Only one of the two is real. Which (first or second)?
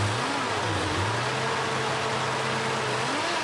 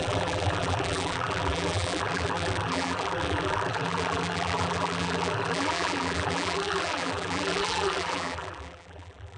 first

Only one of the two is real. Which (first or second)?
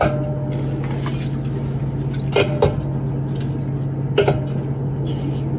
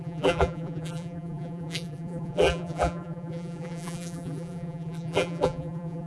first